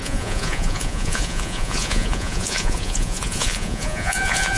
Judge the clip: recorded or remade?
remade